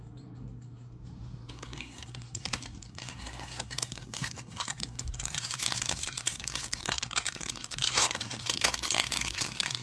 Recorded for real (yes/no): no